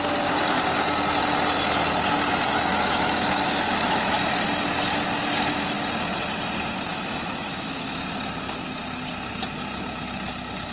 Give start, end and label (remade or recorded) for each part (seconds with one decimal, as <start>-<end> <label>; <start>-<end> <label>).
0.0-2.7 recorded; 2.7-4.1 remade; 4.1-6.9 recorded; 6.9-7.9 remade; 7.9-10.7 recorded